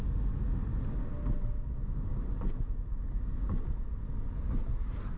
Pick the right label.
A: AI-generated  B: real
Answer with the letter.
B